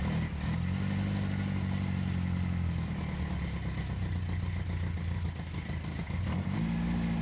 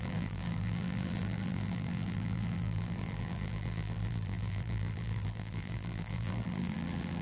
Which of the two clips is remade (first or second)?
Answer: second